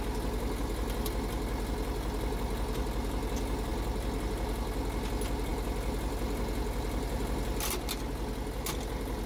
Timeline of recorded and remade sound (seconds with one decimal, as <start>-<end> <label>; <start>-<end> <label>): 0.0-9.3 recorded